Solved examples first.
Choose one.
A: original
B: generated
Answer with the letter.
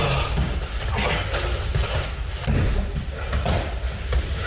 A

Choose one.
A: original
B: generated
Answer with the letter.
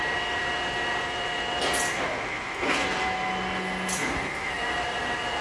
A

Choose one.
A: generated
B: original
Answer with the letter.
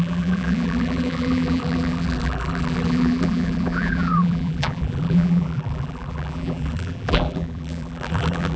A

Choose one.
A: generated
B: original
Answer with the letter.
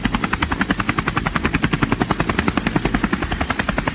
B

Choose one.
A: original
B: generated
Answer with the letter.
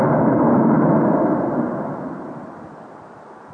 A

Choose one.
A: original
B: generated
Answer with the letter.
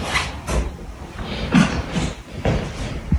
A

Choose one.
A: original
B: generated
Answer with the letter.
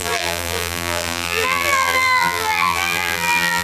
B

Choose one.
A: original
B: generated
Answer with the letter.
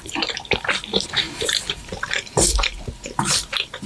B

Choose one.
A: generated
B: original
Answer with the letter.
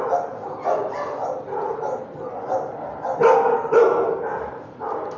B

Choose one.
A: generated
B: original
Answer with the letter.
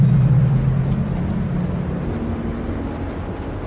B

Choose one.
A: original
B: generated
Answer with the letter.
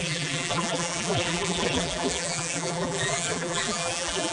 B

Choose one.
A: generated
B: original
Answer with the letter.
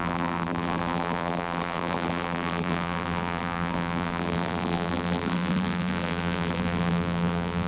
A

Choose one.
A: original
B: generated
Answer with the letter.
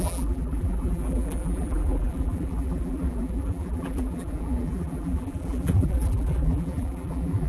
B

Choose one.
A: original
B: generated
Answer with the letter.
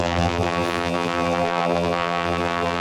B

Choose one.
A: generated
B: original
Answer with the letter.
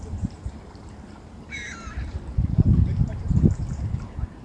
A